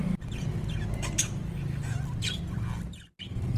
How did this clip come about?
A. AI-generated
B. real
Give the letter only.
B